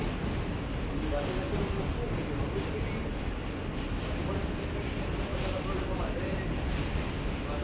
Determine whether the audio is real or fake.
real